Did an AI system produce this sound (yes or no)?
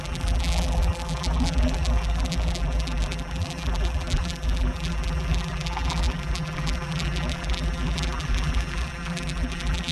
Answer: yes